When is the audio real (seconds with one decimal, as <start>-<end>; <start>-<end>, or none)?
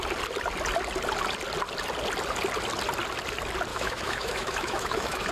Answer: 0.0-3.7